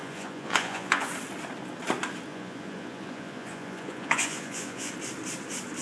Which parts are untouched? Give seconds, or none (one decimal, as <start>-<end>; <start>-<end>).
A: 1.1-2.3; 4.9-5.8

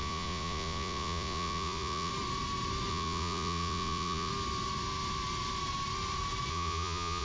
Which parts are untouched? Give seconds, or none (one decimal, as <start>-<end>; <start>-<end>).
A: 2.1-2.9; 4.3-6.5